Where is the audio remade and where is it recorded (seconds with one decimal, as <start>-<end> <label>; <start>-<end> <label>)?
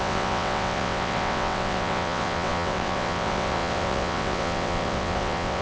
0.0-5.6 remade